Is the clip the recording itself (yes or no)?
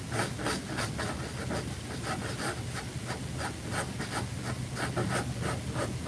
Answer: yes